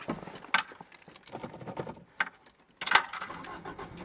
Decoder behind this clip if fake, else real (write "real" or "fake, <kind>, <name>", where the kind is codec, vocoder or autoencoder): real